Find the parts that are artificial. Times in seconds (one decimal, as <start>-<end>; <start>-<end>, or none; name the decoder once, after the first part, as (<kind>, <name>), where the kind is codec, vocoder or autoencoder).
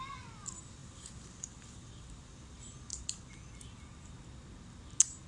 0.8-2.2 (vocoder, BigVGAN v2); 2.9-4.1